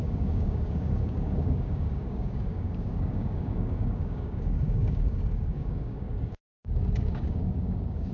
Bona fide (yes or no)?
no